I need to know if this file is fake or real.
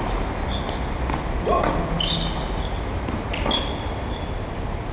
real